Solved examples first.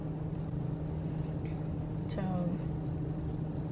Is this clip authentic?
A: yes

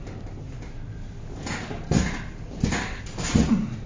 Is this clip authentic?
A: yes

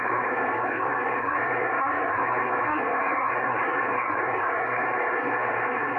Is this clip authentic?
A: no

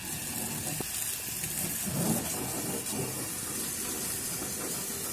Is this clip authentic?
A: yes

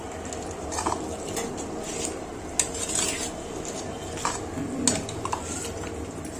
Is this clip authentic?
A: yes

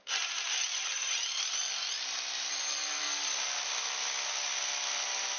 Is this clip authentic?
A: yes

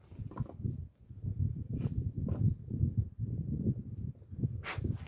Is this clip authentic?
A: no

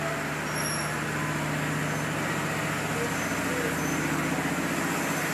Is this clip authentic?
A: yes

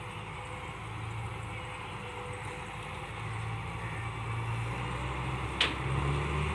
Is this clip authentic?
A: yes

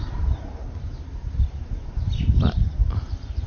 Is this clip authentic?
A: no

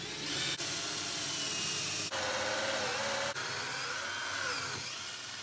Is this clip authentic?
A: yes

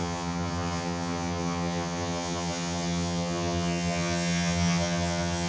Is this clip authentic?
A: no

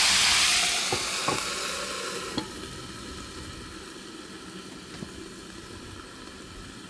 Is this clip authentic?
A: yes